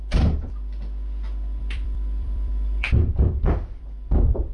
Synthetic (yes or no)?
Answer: yes